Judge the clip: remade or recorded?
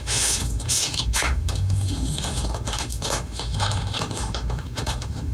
remade